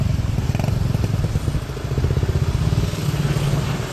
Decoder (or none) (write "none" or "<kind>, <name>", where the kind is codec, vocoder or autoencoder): none